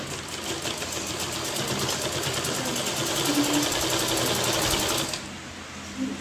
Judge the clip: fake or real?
real